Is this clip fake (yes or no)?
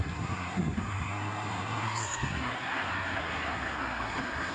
yes